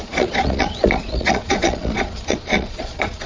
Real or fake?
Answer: fake